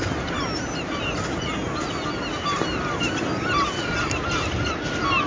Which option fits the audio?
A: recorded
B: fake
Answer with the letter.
A